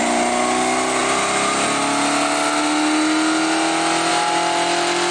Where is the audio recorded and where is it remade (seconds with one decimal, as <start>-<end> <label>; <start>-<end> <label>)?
0.0-5.1 recorded